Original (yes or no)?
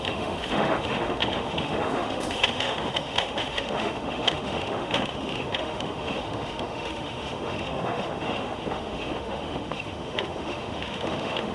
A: no